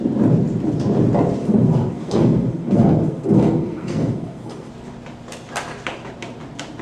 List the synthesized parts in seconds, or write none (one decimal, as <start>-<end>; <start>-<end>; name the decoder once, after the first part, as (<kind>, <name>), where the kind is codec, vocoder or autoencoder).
1.4-4.7 (codec, SNAC)